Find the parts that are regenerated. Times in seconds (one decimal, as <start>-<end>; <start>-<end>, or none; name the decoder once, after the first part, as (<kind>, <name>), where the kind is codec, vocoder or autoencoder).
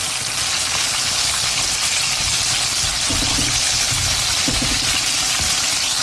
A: 0.8-1.6 (codec, HILCodec); 3.3-3.9